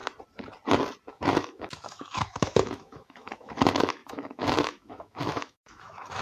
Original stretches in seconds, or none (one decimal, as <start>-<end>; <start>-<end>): 0.0-1.1